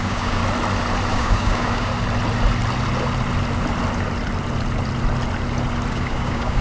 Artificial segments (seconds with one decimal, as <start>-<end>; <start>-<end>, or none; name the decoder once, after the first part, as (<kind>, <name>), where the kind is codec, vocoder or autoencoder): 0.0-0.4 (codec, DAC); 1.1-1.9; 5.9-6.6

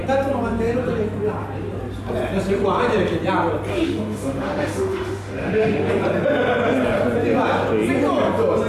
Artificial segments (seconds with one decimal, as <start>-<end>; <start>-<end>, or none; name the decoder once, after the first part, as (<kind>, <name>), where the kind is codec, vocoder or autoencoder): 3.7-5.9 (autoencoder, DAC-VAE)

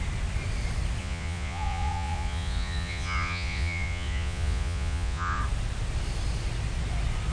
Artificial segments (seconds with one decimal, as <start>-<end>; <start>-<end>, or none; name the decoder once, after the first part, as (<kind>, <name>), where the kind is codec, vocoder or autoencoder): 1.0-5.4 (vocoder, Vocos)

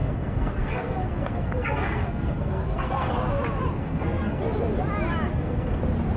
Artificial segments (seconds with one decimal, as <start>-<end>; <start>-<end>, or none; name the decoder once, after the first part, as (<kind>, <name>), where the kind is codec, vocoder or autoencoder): 0.0-3.1 (codec, SNAC); 3.8-4.4; 5.3-5.8

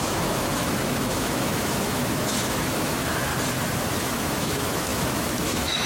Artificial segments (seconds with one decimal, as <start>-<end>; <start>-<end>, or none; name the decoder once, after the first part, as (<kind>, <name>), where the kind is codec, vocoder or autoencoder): 0.0-3.3 (autoencoder, DAC-VAE); 4.0-5.9